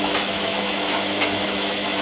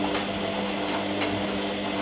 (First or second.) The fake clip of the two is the first